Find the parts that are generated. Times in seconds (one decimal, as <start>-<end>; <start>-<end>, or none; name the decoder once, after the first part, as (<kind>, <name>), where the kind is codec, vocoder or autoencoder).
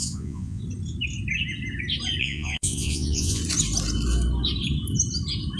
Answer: 0.0-0.6 (vocoder, Vocos); 2.2-3.4